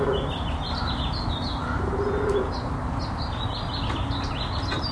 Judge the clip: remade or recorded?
recorded